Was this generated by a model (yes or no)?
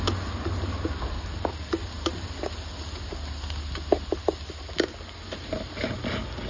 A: no